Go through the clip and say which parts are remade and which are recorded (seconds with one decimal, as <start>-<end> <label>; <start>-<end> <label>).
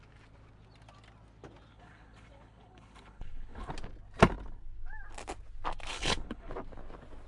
0.0-1.7 recorded; 1.7-3.7 remade; 3.7-5.9 recorded; 5.9-6.5 remade; 6.5-7.3 recorded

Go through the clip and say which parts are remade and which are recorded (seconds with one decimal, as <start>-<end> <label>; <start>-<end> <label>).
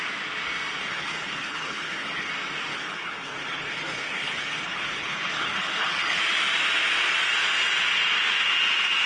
0.0-0.8 recorded; 0.8-2.3 remade; 2.3-2.7 recorded; 2.7-6.2 remade; 6.2-9.1 recorded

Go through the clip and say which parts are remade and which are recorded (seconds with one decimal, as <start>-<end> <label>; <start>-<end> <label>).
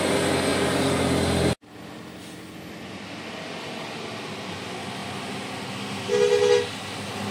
0.0-7.3 recorded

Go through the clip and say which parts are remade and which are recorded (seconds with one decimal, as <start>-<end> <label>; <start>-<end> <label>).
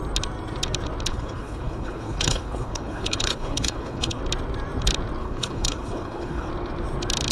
0.0-1.1 recorded; 1.1-4.2 remade; 4.2-5.2 recorded; 5.2-6.5 remade; 6.5-7.3 recorded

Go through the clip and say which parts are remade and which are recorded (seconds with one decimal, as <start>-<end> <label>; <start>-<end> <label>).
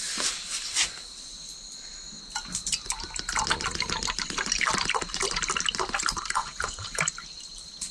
0.0-6.4 recorded; 6.4-7.0 remade; 7.0-7.9 recorded